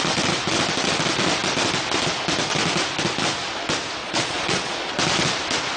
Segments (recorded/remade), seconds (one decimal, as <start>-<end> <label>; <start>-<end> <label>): 0.0-4.0 recorded; 4.0-4.9 remade; 4.9-5.8 recorded